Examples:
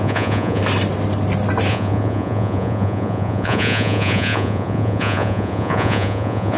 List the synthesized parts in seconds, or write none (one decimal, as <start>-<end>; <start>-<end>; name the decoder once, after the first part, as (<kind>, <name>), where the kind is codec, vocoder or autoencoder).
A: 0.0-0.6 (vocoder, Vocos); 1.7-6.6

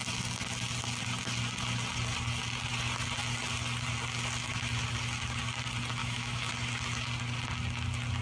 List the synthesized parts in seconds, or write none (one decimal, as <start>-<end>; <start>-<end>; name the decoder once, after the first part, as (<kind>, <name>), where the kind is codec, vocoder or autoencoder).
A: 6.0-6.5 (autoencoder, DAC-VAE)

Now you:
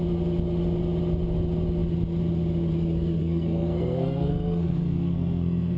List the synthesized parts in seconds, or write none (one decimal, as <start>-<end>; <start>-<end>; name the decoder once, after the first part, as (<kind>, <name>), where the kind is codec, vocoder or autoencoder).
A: 3.2-5.8 (codec, SNAC)

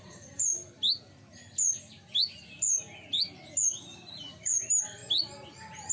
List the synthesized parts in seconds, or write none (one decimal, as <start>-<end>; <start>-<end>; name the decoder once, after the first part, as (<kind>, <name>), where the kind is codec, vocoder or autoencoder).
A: 0.0-0.7 (vocoder, BigVGAN v2); 4.2-5.0

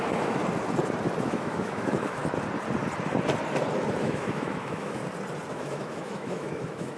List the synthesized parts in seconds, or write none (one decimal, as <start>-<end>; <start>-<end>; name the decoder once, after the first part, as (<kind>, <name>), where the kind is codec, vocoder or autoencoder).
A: 0.0-0.4 (autoencoder, DAC-VAE); 1.2-2.2; 4.0-5.0; 5.5-7.0

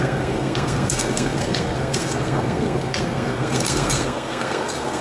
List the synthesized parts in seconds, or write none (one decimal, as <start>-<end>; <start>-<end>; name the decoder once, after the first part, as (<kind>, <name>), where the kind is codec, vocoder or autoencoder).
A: 0.0-5.0 (codec, SNAC)

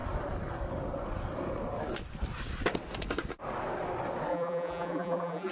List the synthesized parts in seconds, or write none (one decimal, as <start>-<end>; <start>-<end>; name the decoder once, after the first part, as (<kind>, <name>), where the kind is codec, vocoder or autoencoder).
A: 4.3-5.5 (vocoder, BigVGAN v2)

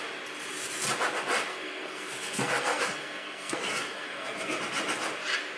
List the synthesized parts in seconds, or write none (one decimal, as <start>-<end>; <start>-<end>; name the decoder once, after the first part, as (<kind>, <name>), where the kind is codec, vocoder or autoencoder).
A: 1.5-4.6 (codec, SNAC)